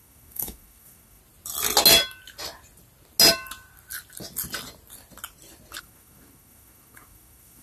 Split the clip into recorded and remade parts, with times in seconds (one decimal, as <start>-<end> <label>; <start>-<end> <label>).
0.0-1.2 remade; 1.2-5.8 recorded; 5.8-7.6 remade